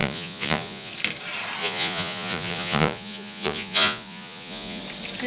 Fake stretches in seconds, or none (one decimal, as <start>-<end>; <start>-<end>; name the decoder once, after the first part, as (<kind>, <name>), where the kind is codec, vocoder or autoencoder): 0.0-0.9 (vocoder, Vocos); 1.6-4.8